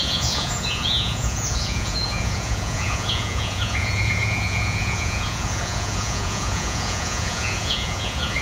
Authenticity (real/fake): fake